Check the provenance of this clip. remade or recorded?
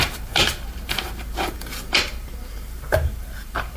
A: remade